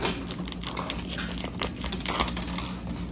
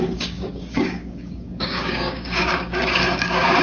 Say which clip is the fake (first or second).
second